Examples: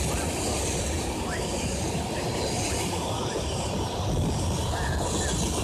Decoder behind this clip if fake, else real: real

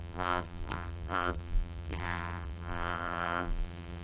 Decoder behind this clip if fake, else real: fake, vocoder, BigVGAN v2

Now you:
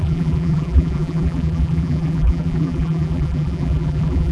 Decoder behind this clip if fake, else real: fake, vocoder, BigVGAN v2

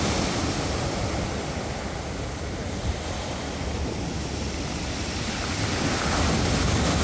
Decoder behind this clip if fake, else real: fake, vocoder, BigVGAN v2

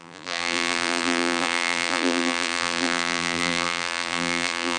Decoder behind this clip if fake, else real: fake, vocoder, BigVGAN v2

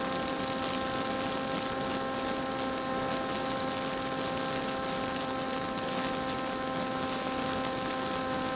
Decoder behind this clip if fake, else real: real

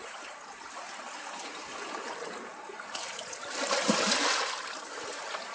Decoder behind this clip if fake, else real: real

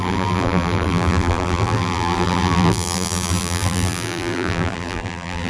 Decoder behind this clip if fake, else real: fake, vocoder, BigVGAN v2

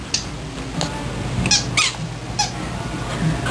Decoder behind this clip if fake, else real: real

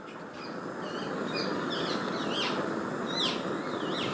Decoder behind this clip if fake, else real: real